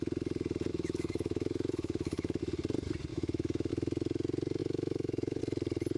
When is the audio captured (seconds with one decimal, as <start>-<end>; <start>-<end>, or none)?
0.0-0.7; 2.4-3.1; 3.7-4.6; 5.4-6.0